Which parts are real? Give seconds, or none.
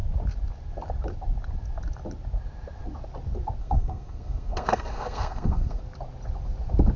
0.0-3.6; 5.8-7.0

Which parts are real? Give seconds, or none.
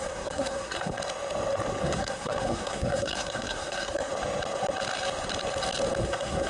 1.0-1.8; 4.1-6.0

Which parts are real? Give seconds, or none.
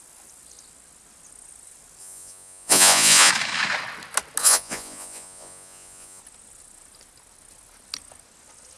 0.0-2.0; 3.3-4.4; 6.2-8.8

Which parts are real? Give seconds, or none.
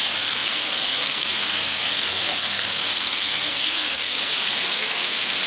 none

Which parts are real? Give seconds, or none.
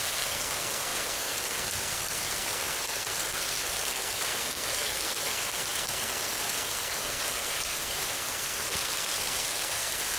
none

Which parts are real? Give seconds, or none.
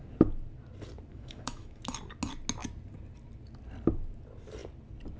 0.0-1.1; 1.8-5.2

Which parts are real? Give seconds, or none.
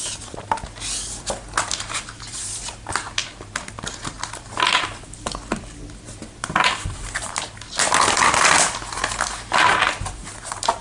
0.0-10.8